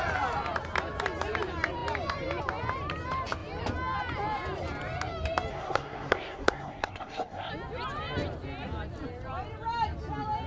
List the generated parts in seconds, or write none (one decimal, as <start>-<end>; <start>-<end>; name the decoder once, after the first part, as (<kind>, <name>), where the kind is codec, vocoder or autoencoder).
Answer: 5.5-7.5 (codec, SNAC)